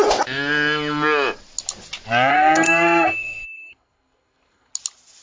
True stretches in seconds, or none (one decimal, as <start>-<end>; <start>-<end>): 0.0-2.3; 4.7-5.2